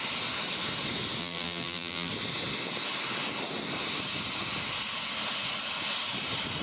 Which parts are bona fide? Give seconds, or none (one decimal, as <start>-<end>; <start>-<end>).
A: 0.0-1.2; 2.1-6.6